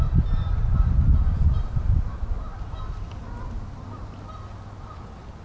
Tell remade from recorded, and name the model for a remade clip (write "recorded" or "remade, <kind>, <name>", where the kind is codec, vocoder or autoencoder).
recorded